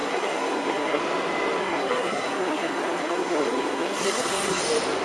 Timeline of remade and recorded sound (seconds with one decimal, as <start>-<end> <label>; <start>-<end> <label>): 0.0-1.0 remade; 1.0-1.6 recorded; 1.6-4.6 remade; 4.6-5.0 recorded